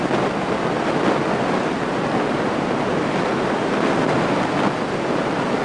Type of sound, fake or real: real